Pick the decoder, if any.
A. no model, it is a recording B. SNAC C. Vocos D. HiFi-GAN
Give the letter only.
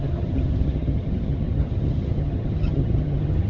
D